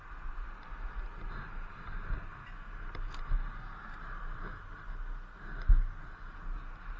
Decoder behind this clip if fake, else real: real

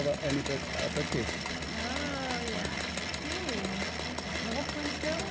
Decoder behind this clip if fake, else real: real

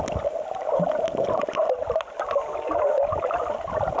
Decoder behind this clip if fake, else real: real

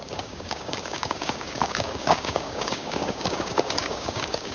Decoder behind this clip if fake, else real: fake, codec, DAC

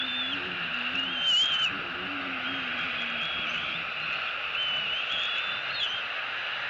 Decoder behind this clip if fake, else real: real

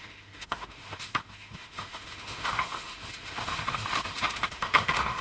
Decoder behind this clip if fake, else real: fake, autoencoder, DAC-VAE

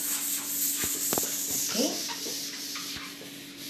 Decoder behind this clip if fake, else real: real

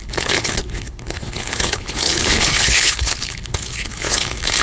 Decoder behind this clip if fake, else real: fake, codec, HILCodec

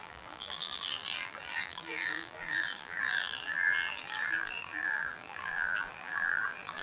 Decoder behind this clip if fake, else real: fake, vocoder, BigVGAN v2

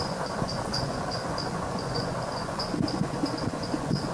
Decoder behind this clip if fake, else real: fake, vocoder, Vocos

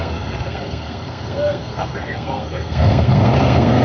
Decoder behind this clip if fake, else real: fake, codec, SNAC